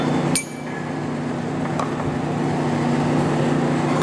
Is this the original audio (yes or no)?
yes